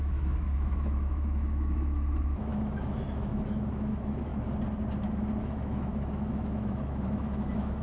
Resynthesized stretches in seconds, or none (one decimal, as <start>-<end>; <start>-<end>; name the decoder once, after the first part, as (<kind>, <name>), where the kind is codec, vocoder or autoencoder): 0.0-4.3 (autoencoder, DAC-VAE); 5.4-7.8